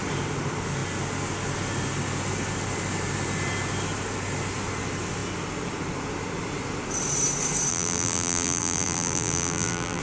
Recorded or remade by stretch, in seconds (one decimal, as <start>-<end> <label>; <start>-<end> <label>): 0.0-7.7 recorded; 7.7-10.0 remade